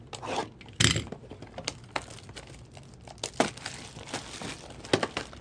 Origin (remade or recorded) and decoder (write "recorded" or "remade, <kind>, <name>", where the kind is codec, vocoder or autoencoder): recorded